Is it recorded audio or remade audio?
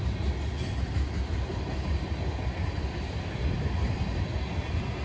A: recorded